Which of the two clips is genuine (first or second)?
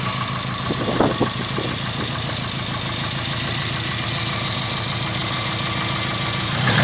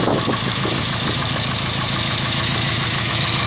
first